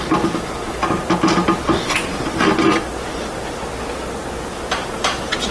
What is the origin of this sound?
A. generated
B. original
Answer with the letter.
B